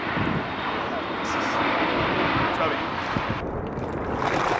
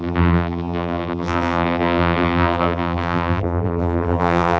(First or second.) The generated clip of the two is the second